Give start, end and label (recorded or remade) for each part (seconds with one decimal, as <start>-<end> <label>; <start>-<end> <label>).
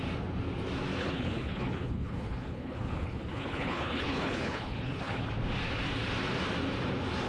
0.0-1.0 recorded; 1.0-5.3 remade; 5.3-7.3 recorded